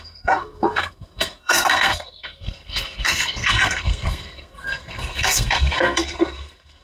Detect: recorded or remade remade